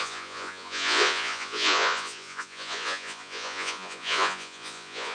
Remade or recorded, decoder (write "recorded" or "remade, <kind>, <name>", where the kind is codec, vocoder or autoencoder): remade, vocoder, Vocos